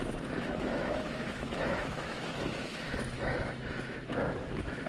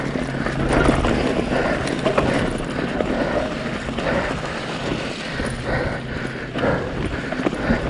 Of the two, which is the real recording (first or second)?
second